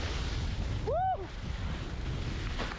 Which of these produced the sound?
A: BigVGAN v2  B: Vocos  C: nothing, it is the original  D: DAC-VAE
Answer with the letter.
C